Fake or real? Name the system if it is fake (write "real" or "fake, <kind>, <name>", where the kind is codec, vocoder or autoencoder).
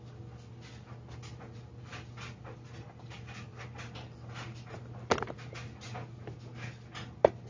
real